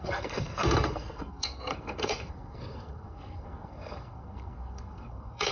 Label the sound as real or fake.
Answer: fake